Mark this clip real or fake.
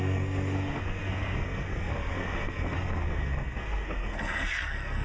fake